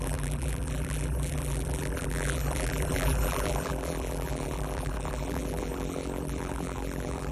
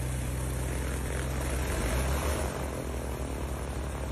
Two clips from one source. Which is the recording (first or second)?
second